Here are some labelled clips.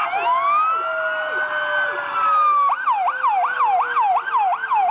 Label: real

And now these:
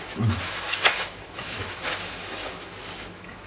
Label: fake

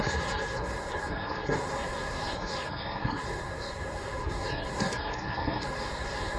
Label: fake